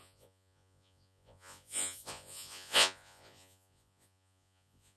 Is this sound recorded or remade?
remade